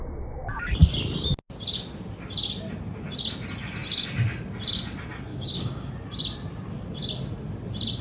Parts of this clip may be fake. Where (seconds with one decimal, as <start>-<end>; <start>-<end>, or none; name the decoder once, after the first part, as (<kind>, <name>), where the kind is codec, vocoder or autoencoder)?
5.3-5.9 (codec, DAC)